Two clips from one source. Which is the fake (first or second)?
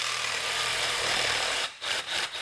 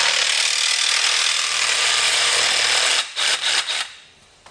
first